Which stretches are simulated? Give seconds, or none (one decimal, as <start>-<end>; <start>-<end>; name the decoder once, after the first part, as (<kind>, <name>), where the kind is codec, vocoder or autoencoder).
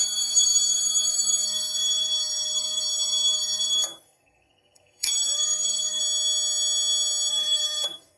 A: 0.0-6.0 (codec, SNAC); 7.3-8.2